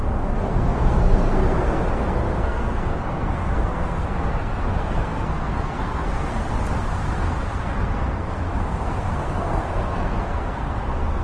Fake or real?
fake